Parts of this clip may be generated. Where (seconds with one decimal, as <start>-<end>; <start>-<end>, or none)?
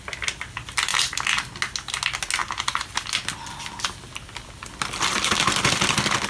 none